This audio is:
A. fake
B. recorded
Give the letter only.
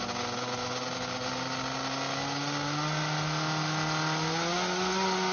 B